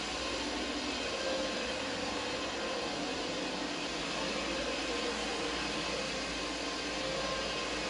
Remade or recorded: recorded